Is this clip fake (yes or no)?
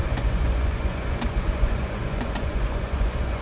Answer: yes